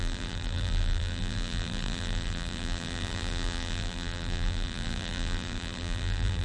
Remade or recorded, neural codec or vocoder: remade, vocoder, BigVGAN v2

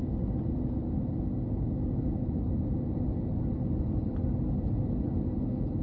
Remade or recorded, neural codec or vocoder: recorded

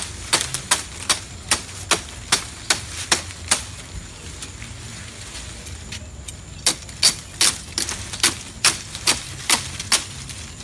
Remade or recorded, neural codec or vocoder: recorded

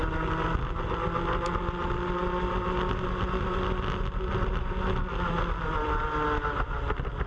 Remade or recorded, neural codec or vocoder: recorded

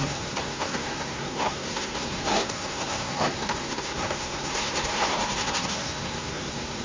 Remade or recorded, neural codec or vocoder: remade, codec, SNAC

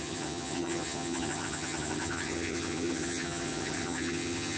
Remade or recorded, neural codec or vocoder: remade, vocoder, HiFi-GAN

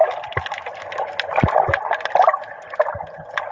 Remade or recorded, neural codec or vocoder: recorded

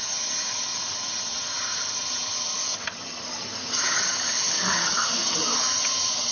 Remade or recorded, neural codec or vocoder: remade, vocoder, HiFi-GAN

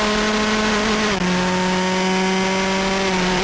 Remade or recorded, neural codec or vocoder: recorded